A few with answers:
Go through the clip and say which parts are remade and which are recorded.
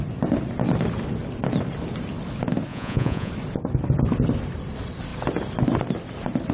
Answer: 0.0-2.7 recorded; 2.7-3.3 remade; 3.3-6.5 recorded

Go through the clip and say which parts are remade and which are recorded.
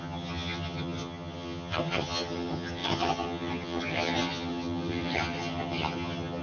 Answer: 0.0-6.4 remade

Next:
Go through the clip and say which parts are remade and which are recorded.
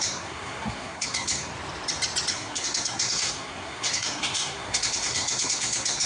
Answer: 0.0-1.5 remade; 1.5-2.3 recorded; 2.3-6.1 remade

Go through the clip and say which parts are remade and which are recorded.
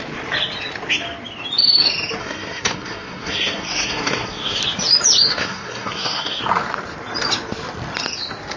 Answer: 0.0-2.2 recorded; 2.2-4.6 remade; 4.6-5.3 recorded; 5.3-6.4 remade; 6.4-8.6 recorded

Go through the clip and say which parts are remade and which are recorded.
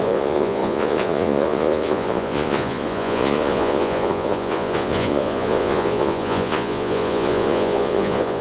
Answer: 0.0-8.4 remade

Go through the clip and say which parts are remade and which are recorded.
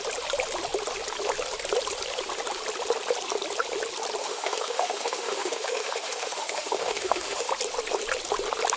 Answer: 0.0-4.2 recorded; 4.2-7.5 remade; 7.5-8.8 recorded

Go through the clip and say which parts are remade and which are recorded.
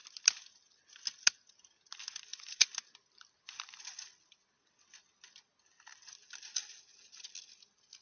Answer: 0.0-8.0 recorded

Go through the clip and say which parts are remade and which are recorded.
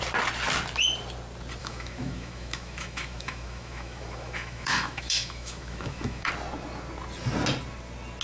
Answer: 0.0-1.6 recorded; 1.6-6.3 remade; 6.3-8.2 recorded